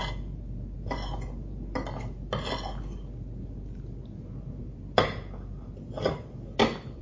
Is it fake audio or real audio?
real